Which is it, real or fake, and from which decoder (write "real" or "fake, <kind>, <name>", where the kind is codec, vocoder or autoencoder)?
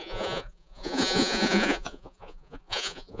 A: fake, vocoder, Vocos